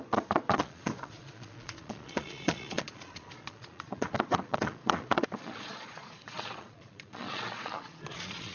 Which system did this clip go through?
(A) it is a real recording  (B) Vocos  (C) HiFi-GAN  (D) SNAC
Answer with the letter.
B